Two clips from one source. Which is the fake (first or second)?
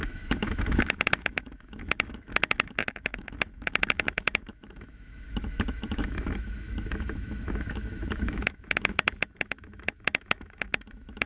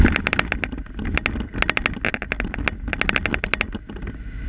first